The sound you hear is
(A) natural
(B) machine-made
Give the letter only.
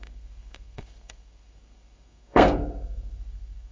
B